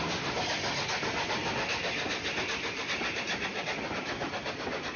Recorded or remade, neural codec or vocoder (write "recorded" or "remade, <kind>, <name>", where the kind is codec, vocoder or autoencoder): recorded